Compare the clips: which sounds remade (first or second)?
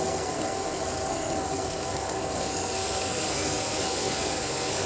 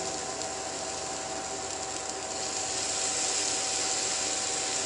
first